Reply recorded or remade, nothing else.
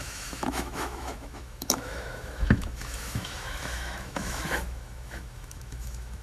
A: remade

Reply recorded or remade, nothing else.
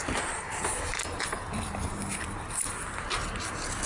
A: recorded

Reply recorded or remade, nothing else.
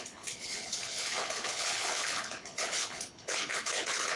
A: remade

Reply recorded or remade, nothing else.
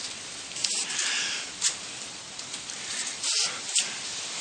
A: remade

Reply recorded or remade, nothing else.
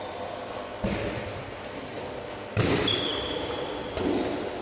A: recorded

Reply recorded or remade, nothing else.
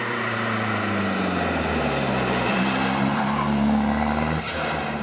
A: recorded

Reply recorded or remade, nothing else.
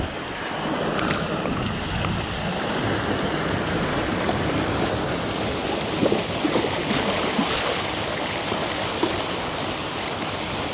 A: recorded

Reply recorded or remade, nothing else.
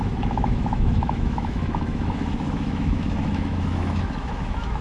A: remade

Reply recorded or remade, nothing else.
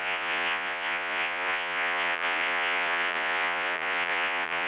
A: remade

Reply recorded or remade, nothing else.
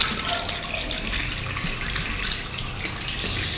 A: recorded